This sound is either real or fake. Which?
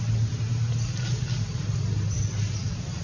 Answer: real